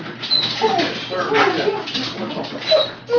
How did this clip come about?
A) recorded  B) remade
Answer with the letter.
A